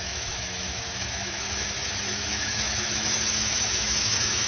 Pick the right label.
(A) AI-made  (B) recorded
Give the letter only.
A